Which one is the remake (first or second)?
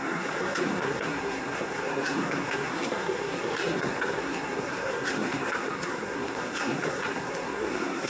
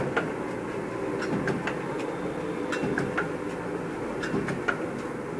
first